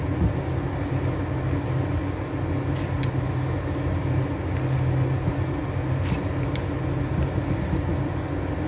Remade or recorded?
recorded